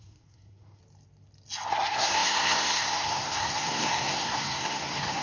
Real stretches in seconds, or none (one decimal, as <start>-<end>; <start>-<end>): 0.8-1.7